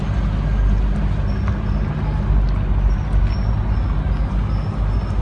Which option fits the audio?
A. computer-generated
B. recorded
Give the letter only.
B